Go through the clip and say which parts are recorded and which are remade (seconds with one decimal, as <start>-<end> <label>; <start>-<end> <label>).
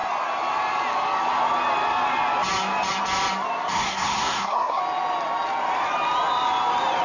0.0-3.7 recorded; 3.7-4.8 remade; 4.8-7.0 recorded